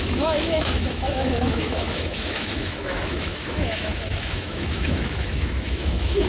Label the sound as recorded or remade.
remade